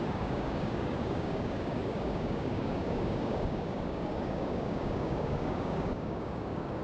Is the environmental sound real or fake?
fake